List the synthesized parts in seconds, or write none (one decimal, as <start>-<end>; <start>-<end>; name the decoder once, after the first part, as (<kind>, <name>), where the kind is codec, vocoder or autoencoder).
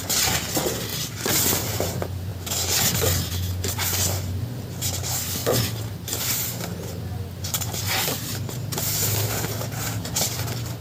0.0-2.3 (vocoder, BigVGAN v2); 3.3-5.4; 10.0-10.8